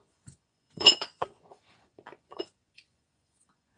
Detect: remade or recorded remade